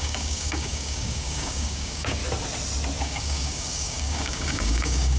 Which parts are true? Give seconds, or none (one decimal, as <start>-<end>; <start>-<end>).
2.2-3.0